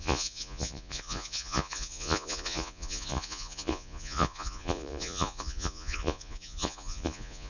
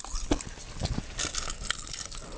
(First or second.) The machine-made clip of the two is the first